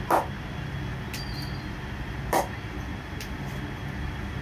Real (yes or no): yes